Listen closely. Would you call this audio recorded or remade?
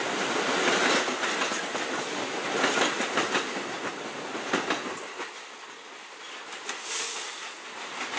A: recorded